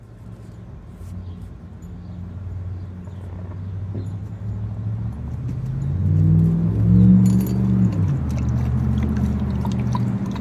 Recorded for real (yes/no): yes